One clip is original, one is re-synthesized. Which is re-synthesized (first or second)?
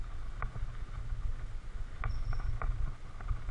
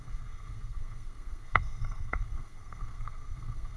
second